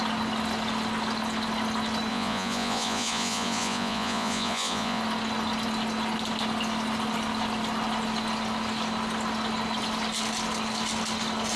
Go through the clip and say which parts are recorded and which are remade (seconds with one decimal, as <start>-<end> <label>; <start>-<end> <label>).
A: 0.0-2.1 recorded; 2.1-5.0 remade; 5.0-11.6 recorded